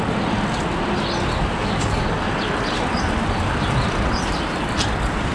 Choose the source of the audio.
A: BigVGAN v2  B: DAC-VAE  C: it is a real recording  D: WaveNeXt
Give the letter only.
C